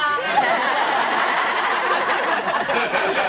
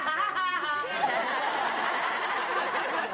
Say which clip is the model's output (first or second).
first